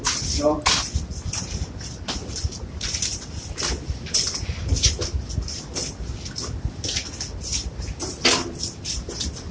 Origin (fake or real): real